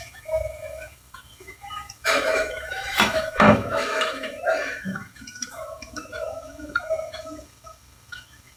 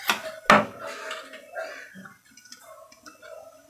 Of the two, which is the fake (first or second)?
first